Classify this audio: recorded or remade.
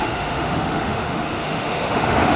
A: remade